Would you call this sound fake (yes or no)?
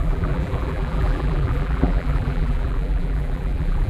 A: yes